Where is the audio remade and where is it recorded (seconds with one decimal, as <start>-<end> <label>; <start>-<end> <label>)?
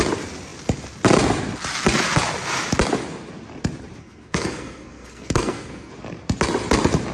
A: 0.0-4.0 recorded; 4.0-5.9 remade; 5.9-7.1 recorded